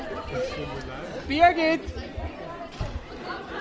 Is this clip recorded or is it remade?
recorded